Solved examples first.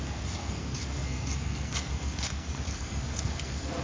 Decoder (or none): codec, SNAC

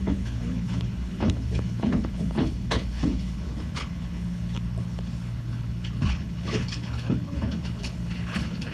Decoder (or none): codec, HILCodec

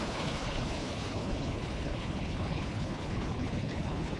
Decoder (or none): codec, HILCodec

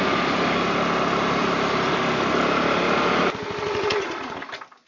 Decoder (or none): none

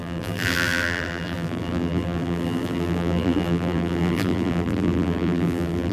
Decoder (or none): vocoder, BigVGAN v2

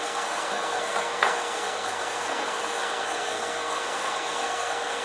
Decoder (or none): codec, SNAC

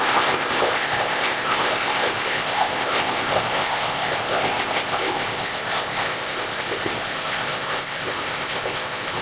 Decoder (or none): codec, ZipCodec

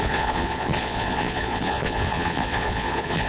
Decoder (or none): vocoder, Vocos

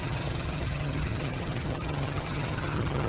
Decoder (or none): vocoder, HiFi-GAN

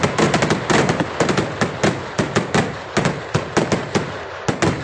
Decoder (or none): none